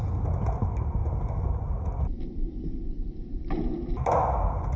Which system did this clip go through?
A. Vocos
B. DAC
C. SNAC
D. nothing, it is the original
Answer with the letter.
D